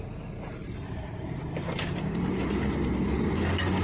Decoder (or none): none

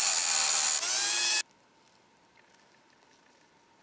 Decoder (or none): none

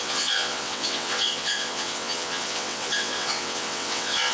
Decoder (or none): vocoder, WaveNeXt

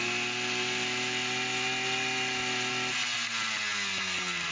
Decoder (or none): none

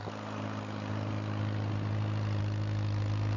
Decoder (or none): none